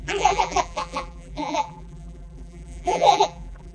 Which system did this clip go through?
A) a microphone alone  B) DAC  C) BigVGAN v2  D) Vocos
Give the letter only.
C